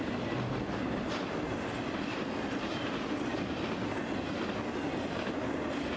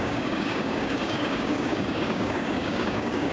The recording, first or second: first